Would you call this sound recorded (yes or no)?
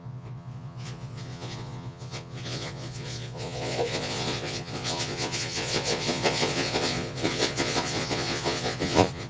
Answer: no